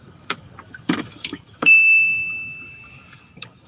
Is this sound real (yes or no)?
no